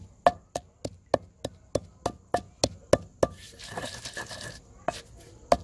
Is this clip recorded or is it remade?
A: recorded